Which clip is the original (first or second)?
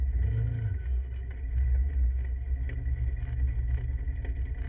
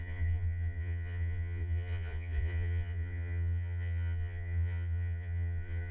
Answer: first